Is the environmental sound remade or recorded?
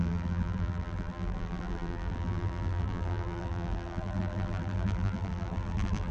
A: remade